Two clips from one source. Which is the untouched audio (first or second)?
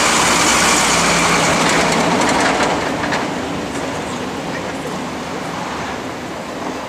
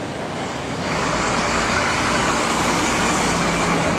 first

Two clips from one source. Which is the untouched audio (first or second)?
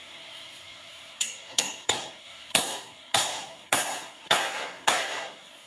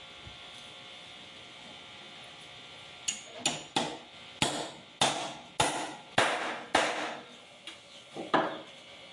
second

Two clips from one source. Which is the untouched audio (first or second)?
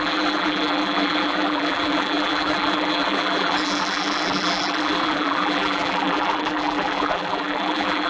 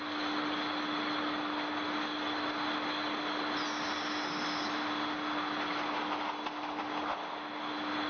second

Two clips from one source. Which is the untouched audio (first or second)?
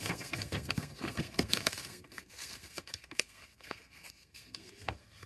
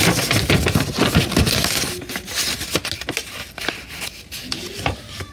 second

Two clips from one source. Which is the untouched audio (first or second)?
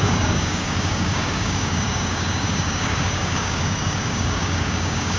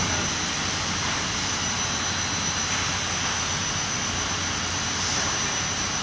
second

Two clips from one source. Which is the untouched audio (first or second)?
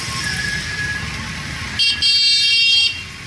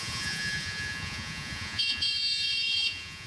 first